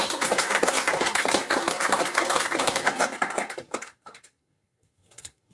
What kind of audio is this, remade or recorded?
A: remade